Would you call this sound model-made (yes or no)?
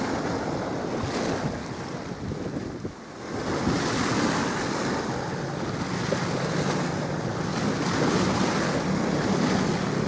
no